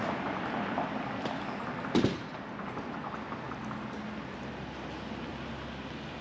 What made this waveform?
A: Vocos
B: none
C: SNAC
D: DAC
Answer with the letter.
B